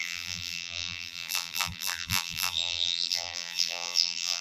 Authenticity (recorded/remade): remade